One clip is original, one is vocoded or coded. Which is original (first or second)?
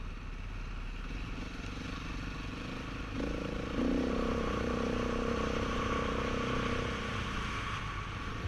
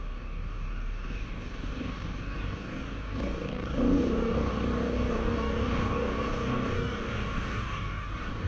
first